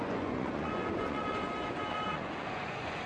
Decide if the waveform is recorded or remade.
remade